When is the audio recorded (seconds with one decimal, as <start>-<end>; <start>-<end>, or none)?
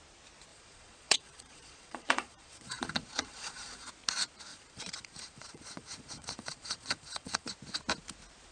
0.0-0.5; 3.9-4.5; 7.5-8.5